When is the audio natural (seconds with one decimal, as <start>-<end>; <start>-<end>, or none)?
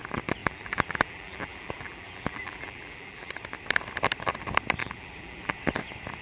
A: 0.0-0.4; 3.3-4.8; 5.5-6.2